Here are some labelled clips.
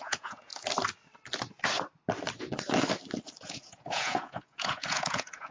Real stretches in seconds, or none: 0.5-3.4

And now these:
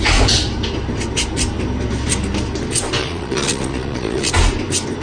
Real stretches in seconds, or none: 0.0-3.0; 4.3-5.0

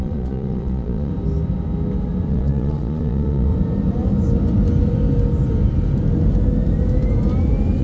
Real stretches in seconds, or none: 1.1-2.3; 3.5-7.8

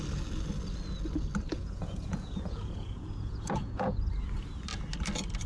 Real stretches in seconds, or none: 0.0-1.5; 4.1-5.5

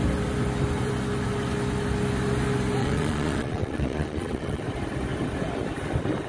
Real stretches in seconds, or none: 0.0-2.8; 4.6-6.3